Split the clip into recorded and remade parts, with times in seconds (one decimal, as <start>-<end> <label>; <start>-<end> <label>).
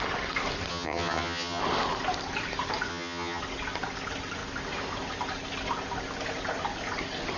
0.0-0.7 recorded; 0.7-1.6 remade; 1.6-2.9 recorded; 2.9-3.4 remade; 3.4-7.4 recorded